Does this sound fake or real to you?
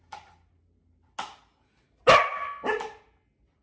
real